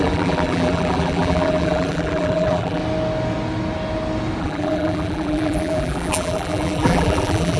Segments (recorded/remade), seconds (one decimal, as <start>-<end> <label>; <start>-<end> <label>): 0.0-2.8 remade; 2.8-4.4 recorded; 4.4-7.6 remade